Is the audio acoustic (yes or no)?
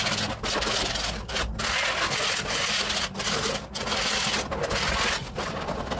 yes